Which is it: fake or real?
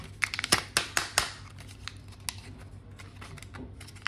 real